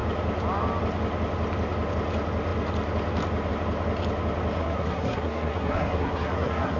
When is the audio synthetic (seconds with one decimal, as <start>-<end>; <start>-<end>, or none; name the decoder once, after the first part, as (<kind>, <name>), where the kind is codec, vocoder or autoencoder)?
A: 4.6-6.8 (codec, SNAC)